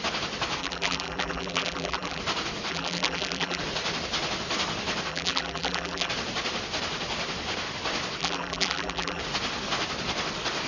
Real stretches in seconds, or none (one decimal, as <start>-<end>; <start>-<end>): 0.0-0.6; 2.2-2.7; 3.6-5.1; 6.1-8.2; 9.2-10.7